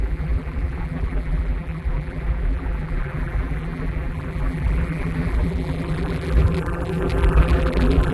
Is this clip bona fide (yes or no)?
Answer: no